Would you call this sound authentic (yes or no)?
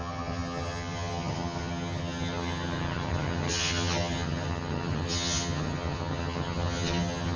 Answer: no